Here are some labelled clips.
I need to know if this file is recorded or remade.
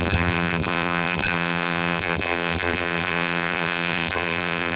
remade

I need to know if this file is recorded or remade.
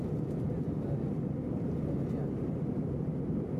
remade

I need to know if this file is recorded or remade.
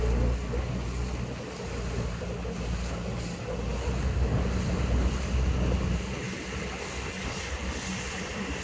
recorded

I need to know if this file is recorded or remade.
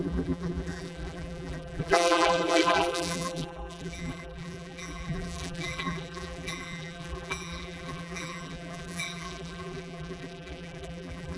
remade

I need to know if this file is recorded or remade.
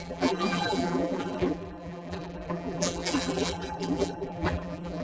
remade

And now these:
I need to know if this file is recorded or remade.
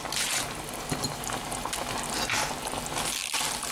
recorded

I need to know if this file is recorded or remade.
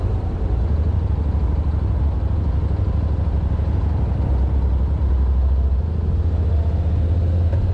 recorded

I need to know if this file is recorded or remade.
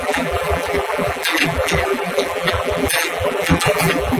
remade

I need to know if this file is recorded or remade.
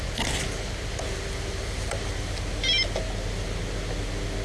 recorded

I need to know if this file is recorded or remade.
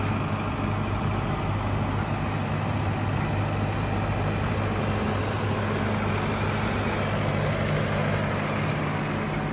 recorded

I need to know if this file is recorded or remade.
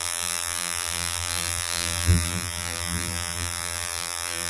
remade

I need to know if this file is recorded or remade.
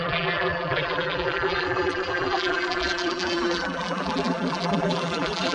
remade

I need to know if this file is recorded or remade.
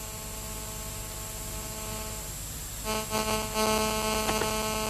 recorded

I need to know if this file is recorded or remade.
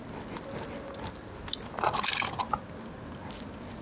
recorded